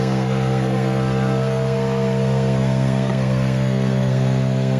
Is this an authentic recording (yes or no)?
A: no